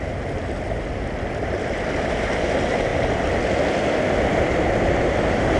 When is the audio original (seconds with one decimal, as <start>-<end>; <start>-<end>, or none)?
0.0-5.6